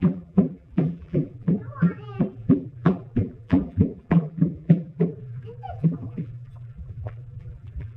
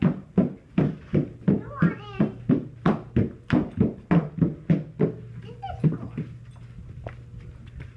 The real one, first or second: second